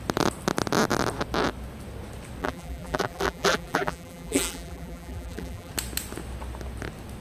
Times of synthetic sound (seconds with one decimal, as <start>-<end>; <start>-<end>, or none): 2.4-5.7